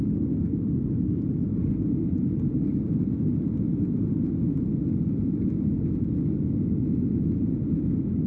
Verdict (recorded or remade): recorded